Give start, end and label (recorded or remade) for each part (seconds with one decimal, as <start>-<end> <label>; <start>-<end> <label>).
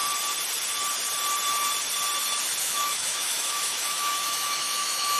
0.0-2.6 recorded; 2.6-5.2 remade